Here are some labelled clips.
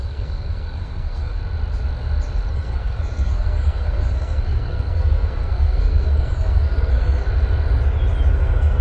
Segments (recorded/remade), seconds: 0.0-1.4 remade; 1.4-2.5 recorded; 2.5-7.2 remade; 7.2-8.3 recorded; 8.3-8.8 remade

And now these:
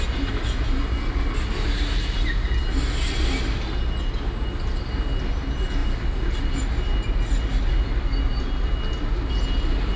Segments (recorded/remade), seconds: 0.0-10.0 recorded

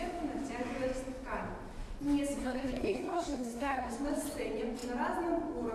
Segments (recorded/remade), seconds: 0.0-2.4 recorded; 2.4-3.9 remade; 3.9-5.7 recorded

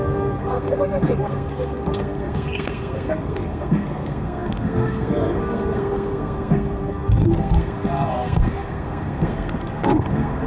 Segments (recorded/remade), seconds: 0.0-10.5 remade

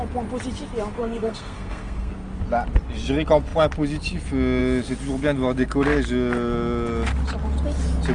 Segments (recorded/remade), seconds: 0.0-1.0 recorded; 1.0-2.1 remade; 2.1-8.1 recorded

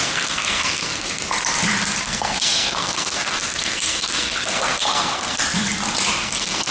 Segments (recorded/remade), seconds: 0.0-1.2 remade; 1.2-2.0 recorded; 2.0-5.4 remade; 5.4-6.2 recorded; 6.2-6.7 remade

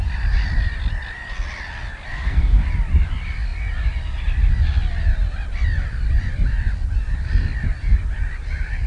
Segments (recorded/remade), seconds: 0.0-2.1 recorded; 2.1-2.7 remade; 2.7-8.9 recorded